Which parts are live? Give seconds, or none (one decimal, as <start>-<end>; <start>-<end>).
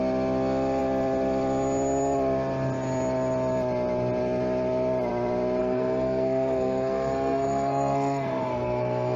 0.0-5.6